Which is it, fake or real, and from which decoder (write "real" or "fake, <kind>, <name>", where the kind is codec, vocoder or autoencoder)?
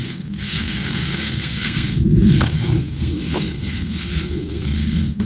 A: fake, codec, SNAC